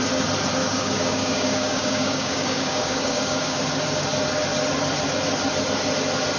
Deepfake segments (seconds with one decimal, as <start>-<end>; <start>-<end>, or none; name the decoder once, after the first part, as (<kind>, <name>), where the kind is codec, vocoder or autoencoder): 0.6-3.6 (codec, DAC)